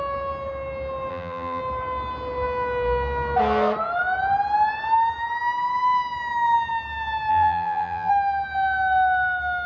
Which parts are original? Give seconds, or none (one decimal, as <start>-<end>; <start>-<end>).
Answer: 0.0-1.1; 1.6-7.3; 8.1-9.7